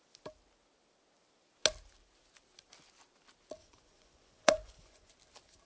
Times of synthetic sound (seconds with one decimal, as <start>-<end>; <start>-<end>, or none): 3.6-5.1